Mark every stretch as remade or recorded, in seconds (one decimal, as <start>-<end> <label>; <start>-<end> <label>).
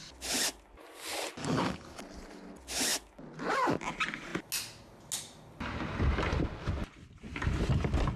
0.0-1.4 recorded; 1.4-2.0 remade; 2.0-8.2 recorded